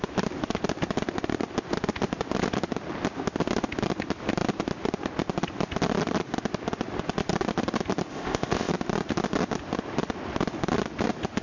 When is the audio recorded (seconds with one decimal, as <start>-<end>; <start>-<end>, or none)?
0.0-8.1; 8.7-11.4